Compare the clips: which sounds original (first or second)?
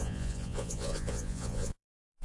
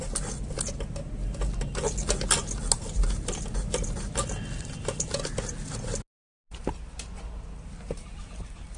second